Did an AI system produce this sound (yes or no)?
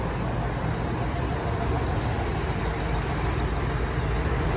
no